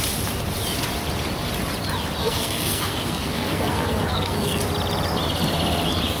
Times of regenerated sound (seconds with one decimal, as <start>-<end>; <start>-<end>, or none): 2.2-4.6